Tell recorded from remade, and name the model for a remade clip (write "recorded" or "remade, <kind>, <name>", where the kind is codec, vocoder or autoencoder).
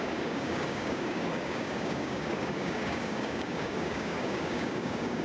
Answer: remade, codec, DAC